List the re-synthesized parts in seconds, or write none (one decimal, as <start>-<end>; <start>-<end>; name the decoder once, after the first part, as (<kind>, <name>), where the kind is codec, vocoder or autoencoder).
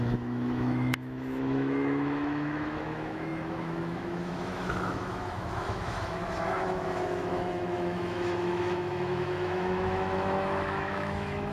0.0-11.5 (autoencoder, DAC-VAE)